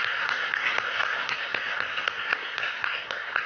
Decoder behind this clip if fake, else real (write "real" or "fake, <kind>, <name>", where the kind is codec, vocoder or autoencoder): fake, codec, SNAC